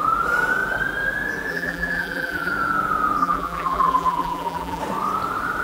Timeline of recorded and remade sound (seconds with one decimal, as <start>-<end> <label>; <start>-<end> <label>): 0.0-1.5 recorded; 1.5-2.5 remade; 2.5-3.2 recorded; 3.2-4.8 remade; 4.8-5.6 recorded